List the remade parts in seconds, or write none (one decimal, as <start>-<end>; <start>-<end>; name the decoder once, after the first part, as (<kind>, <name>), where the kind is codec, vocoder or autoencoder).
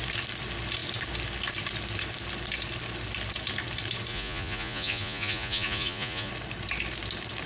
4.1-6.3 (vocoder, Vocos)